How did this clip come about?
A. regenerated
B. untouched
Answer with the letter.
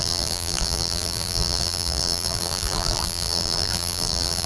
A